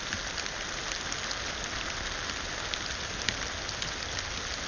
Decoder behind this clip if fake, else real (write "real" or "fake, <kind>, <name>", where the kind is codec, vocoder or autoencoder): real